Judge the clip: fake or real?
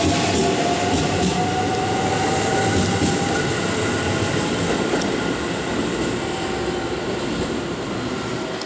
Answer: real